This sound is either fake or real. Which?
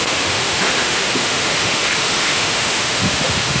fake